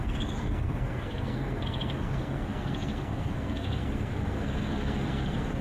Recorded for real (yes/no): no